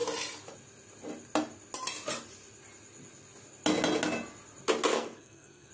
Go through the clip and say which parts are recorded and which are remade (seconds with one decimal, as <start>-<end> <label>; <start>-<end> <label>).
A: 0.0-4.9 recorded; 4.9-5.7 remade